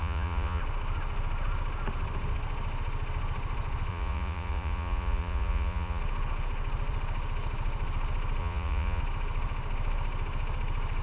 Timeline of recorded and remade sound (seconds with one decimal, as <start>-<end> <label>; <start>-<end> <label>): 0.0-0.6 remade; 0.6-3.9 recorded; 3.9-6.0 remade; 6.0-8.4 recorded; 8.4-9.0 remade; 9.0-11.0 recorded